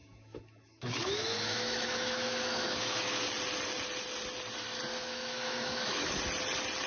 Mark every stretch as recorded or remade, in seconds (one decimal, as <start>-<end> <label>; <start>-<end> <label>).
0.0-3.2 remade; 3.2-4.9 recorded; 4.9-6.2 remade; 6.2-6.9 recorded